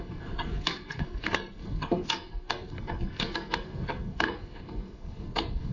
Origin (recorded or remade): remade